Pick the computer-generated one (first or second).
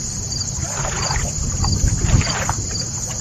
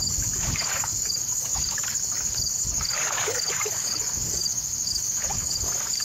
second